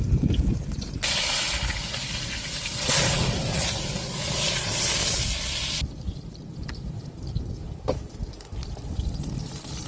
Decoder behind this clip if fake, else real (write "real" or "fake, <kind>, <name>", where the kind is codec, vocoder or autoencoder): real